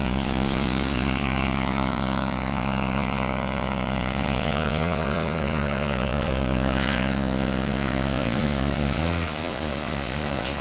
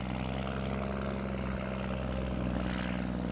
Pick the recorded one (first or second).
second